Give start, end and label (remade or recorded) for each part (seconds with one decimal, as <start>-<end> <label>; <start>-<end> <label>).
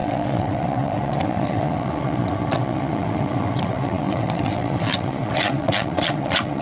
0.0-6.6 remade